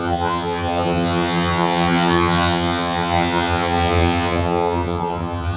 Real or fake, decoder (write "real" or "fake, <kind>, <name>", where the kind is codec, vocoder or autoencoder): fake, vocoder, HiFi-GAN